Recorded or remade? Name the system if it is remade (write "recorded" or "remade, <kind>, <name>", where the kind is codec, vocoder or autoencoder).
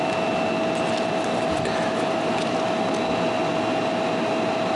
recorded